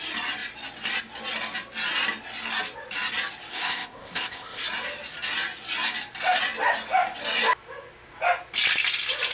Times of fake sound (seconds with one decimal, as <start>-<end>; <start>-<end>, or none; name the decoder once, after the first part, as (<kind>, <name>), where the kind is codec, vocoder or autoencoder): 3.5-4.6 (codec, ZipCodec)